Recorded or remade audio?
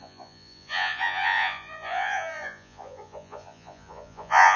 remade